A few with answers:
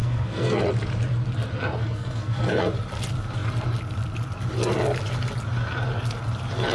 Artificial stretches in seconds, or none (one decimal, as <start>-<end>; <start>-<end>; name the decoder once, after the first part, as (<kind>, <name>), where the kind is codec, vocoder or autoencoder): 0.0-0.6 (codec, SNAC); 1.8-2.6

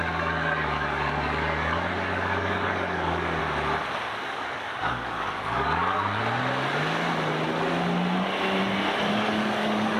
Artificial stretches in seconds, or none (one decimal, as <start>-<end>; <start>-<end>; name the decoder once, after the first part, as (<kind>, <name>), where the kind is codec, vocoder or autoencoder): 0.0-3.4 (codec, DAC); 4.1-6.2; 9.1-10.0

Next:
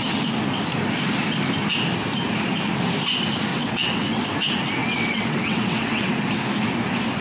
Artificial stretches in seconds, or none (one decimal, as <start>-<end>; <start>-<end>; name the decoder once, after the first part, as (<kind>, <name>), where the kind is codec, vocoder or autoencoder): 3.5-4.2 (vocoder, WaveNeXt); 4.8-6.1